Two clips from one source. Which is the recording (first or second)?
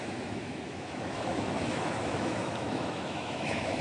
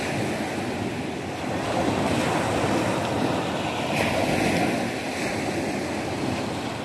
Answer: second